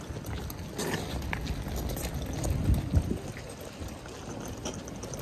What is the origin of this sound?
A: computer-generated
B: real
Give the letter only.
B